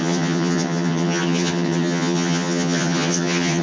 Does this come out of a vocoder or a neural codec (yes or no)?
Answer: yes